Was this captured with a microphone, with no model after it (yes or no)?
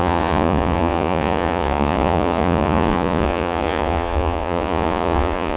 no